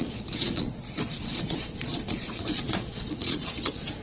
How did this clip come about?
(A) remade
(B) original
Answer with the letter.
A